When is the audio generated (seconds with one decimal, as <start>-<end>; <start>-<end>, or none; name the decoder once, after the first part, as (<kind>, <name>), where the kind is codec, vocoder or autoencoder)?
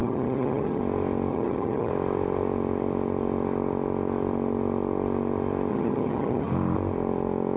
0.0-0.8 (vocoder, HiFi-GAN); 1.3-1.9; 5.7-6.5